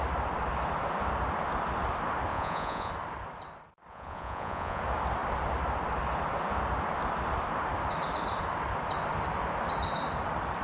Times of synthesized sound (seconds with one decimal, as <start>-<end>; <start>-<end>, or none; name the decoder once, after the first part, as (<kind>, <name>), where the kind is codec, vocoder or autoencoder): 2.3-2.9 (vocoder, Vocos); 3.9-4.8